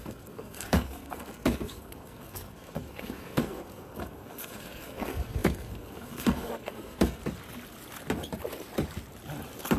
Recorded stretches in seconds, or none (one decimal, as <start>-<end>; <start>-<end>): 7.2-9.8